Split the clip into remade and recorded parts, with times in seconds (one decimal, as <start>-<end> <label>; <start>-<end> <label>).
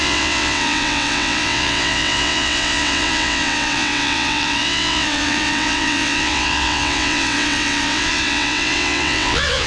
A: 0.0-9.7 remade